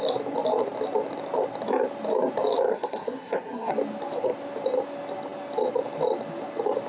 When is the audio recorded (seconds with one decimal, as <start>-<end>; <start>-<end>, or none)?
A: 0.0-2.7; 3.7-6.9